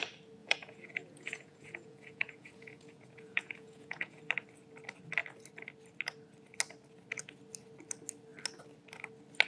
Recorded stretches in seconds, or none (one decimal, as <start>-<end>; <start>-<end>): 0.0-0.4; 4.2-9.5